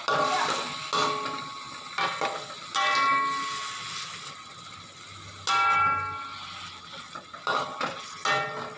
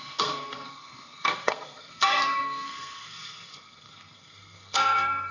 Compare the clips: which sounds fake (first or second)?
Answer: second